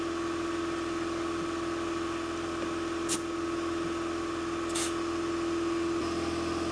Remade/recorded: recorded